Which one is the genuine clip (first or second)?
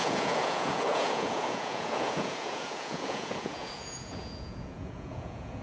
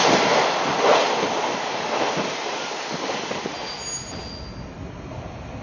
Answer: second